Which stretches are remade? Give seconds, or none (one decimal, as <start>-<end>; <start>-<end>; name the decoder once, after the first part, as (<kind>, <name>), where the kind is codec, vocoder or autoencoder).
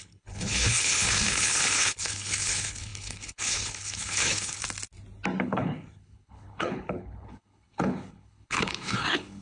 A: 0.0-4.6 (codec, HILCodec); 5.4-9.4